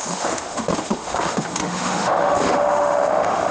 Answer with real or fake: fake